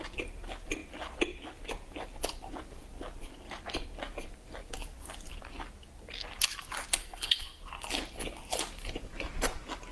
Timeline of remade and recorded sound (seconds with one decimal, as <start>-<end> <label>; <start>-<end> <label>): 0.0-7.0 recorded; 7.0-7.6 remade; 7.6-9.9 recorded